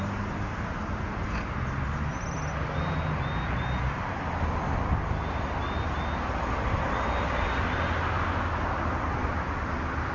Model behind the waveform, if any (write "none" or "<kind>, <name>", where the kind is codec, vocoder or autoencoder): none